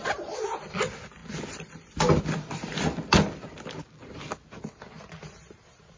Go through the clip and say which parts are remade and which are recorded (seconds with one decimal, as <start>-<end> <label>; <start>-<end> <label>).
0.0-6.0 recorded